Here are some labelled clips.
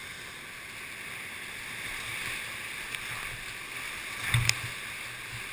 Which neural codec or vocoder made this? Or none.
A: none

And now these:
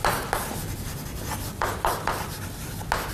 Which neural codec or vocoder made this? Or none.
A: none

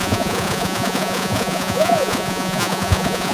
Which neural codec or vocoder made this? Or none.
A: vocoder, Vocos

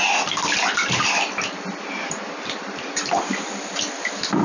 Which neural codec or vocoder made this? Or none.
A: none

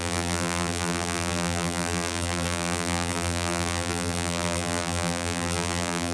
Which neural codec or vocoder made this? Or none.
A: vocoder, BigVGAN v2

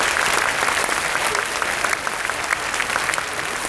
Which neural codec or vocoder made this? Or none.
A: none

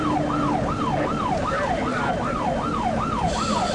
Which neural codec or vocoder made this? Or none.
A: none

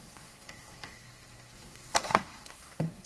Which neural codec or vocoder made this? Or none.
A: codec, SNAC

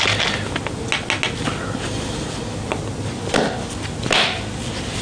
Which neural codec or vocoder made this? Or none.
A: none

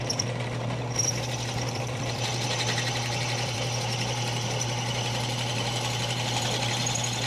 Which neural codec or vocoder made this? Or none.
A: vocoder, BigVGAN v2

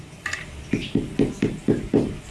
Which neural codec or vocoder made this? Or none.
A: none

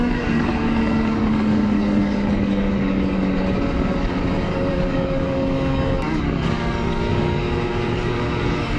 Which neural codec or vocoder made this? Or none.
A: codec, DAC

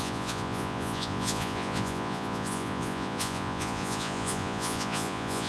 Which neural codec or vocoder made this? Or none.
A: vocoder, Vocos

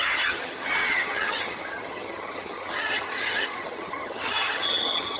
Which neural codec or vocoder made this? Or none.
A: vocoder, HiFi-GAN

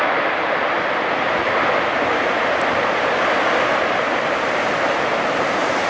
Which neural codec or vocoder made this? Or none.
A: none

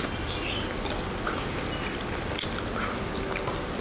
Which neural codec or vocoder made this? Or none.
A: none